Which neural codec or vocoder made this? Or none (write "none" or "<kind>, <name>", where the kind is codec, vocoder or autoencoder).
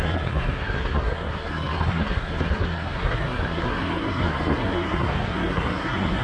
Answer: codec, SNAC